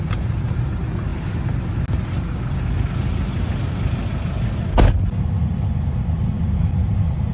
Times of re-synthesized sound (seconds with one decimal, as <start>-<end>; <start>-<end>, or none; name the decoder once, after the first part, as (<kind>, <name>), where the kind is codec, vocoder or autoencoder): none